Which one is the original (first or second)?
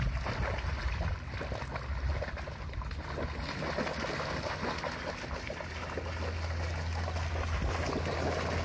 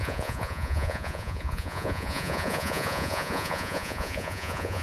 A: first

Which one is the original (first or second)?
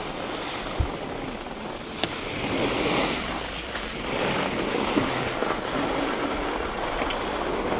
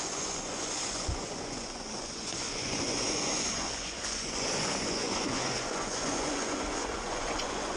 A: first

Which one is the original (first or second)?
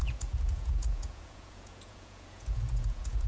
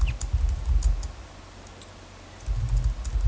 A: second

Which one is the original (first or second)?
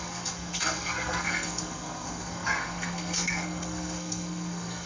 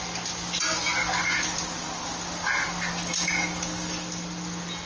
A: second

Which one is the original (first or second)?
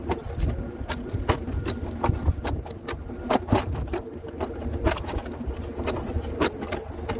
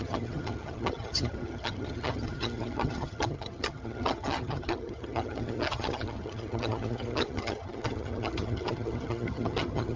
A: first